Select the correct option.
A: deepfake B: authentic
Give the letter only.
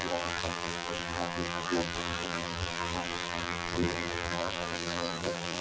A